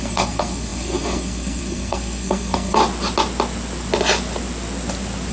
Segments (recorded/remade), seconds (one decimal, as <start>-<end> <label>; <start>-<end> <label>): 0.0-2.8 remade; 2.8-5.3 recorded